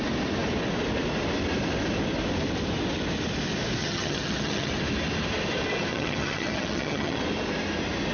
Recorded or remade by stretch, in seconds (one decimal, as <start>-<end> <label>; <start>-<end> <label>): 0.0-3.8 recorded; 3.8-4.7 remade; 4.7-5.9 recorded; 5.9-7.2 remade; 7.2-8.1 recorded